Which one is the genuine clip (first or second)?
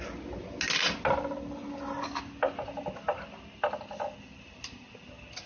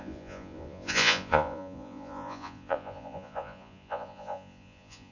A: first